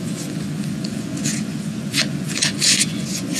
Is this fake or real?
fake